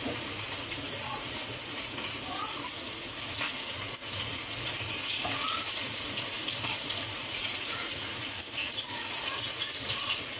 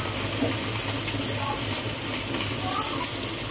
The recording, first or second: second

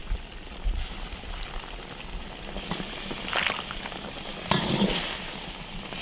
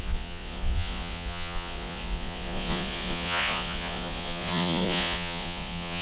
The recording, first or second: first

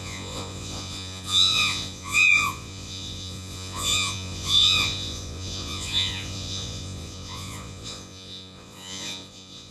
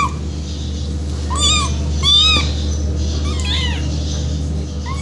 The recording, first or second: second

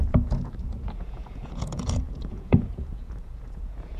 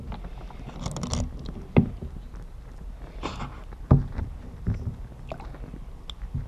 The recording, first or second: second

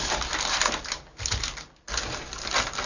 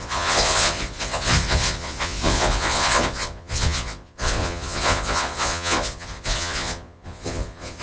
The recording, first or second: first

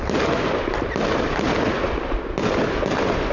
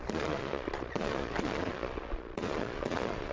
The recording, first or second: first